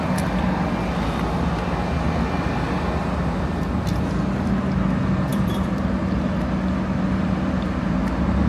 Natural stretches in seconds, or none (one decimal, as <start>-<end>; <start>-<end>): 0.0-5.3; 6.0-8.5